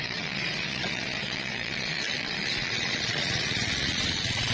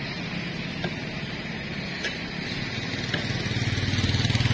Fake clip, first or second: first